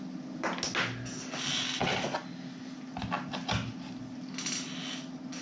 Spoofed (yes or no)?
no